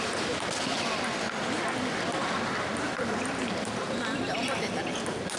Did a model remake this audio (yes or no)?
no